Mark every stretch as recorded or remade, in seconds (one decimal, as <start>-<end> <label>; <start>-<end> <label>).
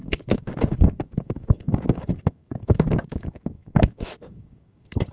0.0-5.1 remade